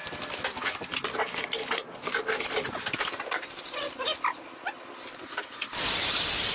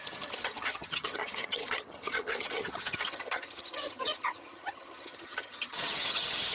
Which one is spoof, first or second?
second